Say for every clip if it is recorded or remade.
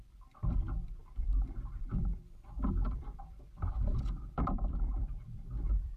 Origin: remade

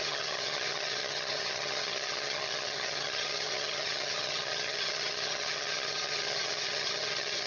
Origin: remade